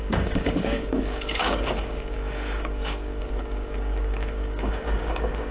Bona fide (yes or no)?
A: no